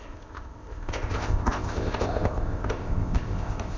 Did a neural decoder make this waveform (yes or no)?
yes